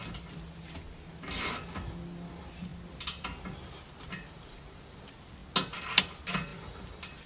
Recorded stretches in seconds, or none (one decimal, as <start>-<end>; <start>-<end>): 0.0-7.3